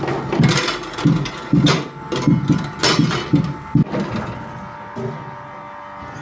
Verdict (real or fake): real